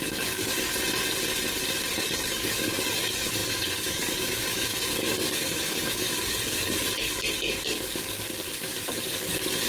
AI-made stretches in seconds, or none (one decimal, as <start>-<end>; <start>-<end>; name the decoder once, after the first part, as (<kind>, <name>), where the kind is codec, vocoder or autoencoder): 0.0-0.7 (codec, DAC); 1.9-9.7